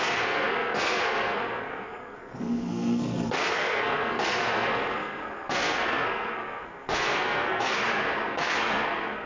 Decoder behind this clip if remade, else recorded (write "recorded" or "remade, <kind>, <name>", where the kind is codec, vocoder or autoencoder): remade, codec, SNAC